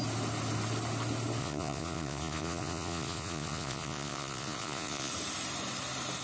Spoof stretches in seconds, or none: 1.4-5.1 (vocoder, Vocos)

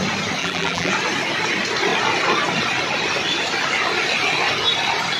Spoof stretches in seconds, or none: 0.4-0.9 (vocoder, BigVGAN v2)

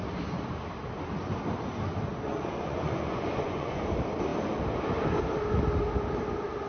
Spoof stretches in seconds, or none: 2.1-3.8 (vocoder, Vocos)